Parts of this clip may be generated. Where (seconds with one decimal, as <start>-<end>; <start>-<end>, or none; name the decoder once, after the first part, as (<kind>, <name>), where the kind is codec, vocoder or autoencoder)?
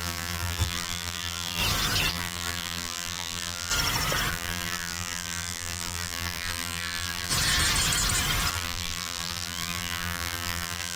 0.0-1.6 (vocoder, BigVGAN v2); 2.1-3.7; 4.3-7.3; 8.5-11.0